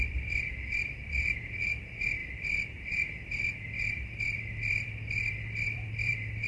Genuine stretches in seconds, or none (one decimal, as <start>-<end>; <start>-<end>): none